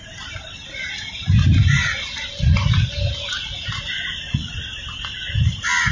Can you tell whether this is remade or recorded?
recorded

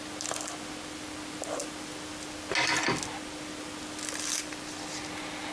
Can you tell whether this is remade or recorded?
recorded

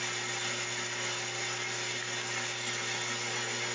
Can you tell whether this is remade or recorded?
recorded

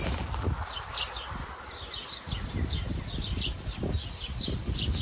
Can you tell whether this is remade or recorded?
recorded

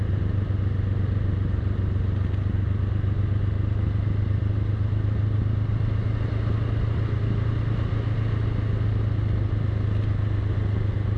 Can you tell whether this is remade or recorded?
recorded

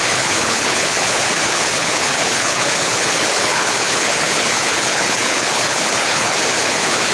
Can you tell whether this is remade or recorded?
remade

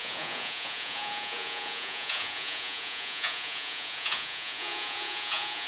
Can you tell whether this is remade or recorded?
remade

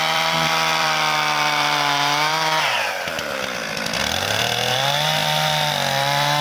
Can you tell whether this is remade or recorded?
remade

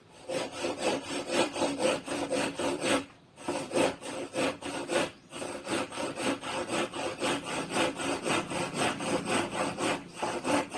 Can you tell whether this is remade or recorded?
remade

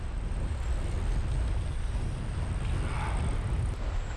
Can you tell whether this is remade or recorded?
recorded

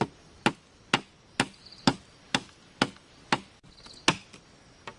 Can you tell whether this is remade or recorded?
recorded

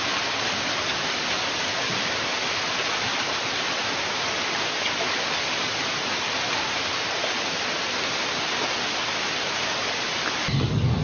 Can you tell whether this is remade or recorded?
recorded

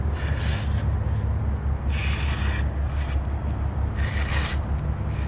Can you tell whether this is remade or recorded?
recorded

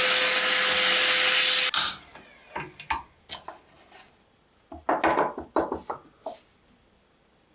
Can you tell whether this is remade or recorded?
recorded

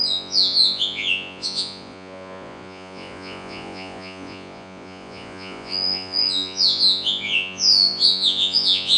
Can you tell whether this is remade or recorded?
remade